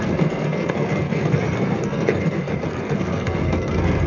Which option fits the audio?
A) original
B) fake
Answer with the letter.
B